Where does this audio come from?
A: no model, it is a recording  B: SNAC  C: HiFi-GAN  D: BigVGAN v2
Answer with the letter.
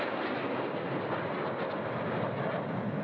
A